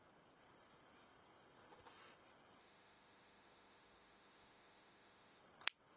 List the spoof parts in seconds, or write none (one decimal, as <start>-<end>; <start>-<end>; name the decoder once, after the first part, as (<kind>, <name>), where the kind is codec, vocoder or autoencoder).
2.6-5.4 (autoencoder, DAC-VAE)